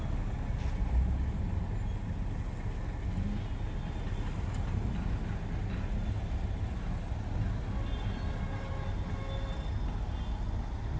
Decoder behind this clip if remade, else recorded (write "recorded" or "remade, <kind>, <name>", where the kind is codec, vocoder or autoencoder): recorded